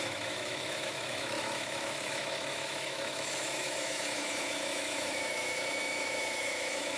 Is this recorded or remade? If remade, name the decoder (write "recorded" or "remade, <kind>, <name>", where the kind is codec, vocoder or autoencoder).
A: remade, autoencoder, DAC-VAE